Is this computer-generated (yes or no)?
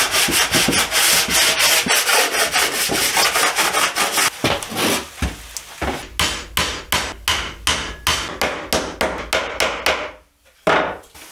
no